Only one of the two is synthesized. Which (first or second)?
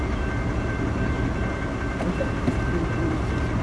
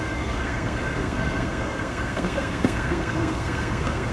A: second